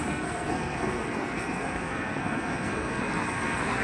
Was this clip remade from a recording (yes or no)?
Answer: yes